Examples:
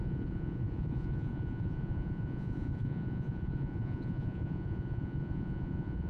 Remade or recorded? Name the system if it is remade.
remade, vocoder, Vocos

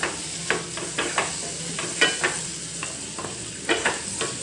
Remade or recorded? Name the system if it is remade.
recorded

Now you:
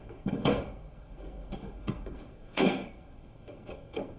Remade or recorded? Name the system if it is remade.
remade, codec, SNAC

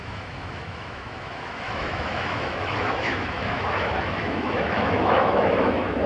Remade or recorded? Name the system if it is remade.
remade, autoencoder, DAC-VAE